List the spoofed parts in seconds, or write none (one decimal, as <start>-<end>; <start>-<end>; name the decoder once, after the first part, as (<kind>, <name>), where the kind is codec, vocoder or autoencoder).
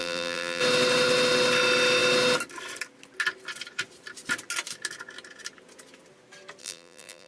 0.0-0.6 (vocoder, BigVGAN v2); 6.6-7.3